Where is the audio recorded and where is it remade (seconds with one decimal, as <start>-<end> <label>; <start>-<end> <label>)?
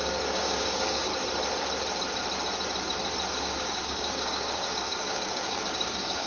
0.0-1.1 remade; 1.1-3.4 recorded; 3.4-6.3 remade